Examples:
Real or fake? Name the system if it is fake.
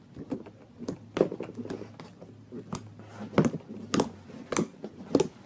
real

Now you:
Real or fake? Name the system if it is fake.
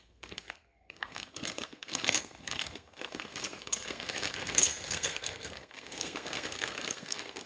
fake, codec, SNAC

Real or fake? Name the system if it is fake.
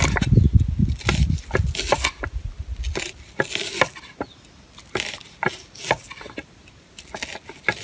real